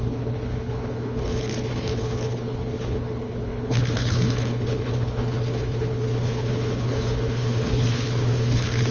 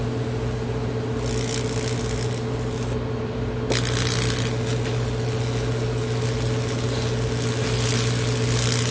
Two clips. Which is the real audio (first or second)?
second